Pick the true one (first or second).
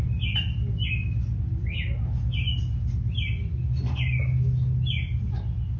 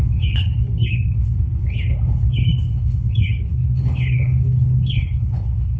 first